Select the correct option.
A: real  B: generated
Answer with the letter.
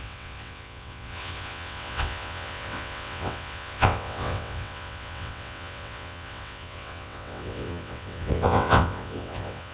B